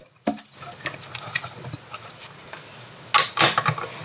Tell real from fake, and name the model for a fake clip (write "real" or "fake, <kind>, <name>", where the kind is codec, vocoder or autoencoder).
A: real